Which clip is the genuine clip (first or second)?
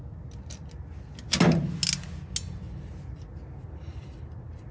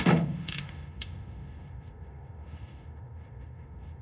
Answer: first